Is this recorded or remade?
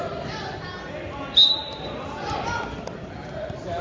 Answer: recorded